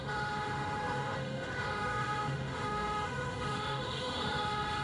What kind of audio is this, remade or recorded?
remade